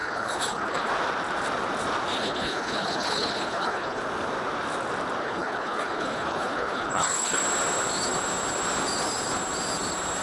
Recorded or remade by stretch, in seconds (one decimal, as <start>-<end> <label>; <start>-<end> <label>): 0.0-0.9 remade; 0.9-2.2 recorded; 2.2-4.0 remade; 4.0-5.2 recorded; 5.2-7.4 remade; 7.4-10.2 recorded